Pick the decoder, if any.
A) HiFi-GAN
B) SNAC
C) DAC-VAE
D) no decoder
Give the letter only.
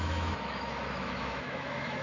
C